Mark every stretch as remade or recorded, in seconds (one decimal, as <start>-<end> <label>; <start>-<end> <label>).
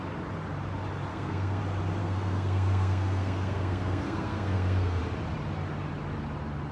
0.0-1.1 recorded; 1.1-1.6 remade; 1.6-2.0 recorded; 2.0-5.0 remade; 5.0-6.7 recorded